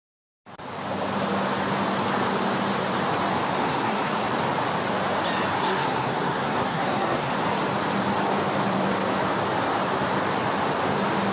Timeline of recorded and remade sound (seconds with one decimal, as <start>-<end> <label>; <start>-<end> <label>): 0.0-3.6 recorded; 3.6-4.3 remade; 4.3-5.6 recorded; 5.6-7.3 remade; 7.3-11.3 recorded